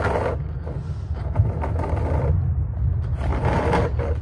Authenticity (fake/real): real